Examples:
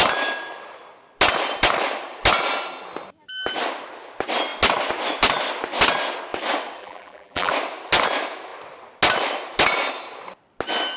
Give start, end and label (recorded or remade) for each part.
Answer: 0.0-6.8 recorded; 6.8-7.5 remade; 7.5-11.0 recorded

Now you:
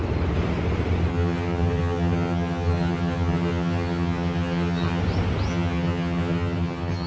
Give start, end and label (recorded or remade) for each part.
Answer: 0.0-1.1 recorded; 1.1-5.0 remade; 5.0-5.5 recorded; 5.5-7.1 remade

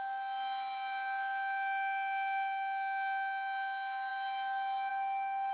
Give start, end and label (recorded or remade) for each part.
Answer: 0.0-5.5 recorded

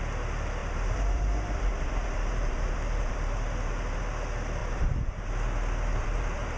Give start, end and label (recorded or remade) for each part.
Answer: 0.0-0.6 recorded; 0.6-4.1 remade; 4.1-4.6 recorded; 4.6-5.3 remade; 5.3-5.9 recorded; 5.9-6.6 remade

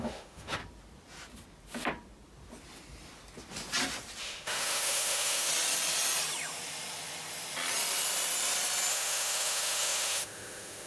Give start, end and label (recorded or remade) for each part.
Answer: 0.0-0.6 remade; 0.6-4.2 recorded; 4.2-5.5 remade; 5.5-8.9 recorded; 8.9-10.9 remade

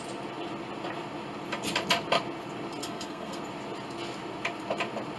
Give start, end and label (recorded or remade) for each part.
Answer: 0.0-2.8 recorded; 2.8-3.4 remade; 3.4-5.2 recorded

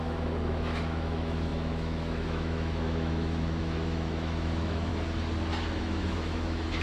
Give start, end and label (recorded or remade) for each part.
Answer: 0.0-4.9 remade; 4.9-5.8 recorded; 5.8-6.8 remade

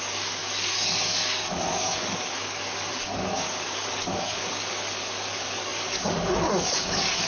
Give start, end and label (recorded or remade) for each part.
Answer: 0.0-7.3 remade